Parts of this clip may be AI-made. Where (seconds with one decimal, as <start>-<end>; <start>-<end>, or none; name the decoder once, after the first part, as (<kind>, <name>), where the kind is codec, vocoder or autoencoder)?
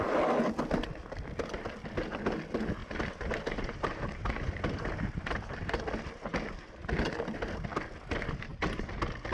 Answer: 2.8-5.8 (vocoder, BigVGAN v2)